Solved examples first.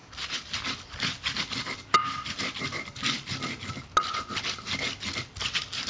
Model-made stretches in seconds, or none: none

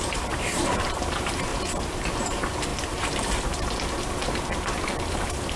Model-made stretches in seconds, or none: 0.0-1.5 (vocoder, BigVGAN v2); 2.2-2.7; 5.1-5.6

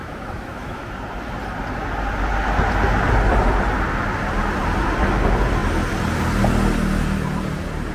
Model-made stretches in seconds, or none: 0.0-0.9 (autoencoder, DAC-VAE)

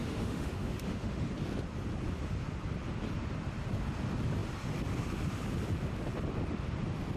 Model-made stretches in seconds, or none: 0.0-1.3 (autoencoder, DAC-VAE)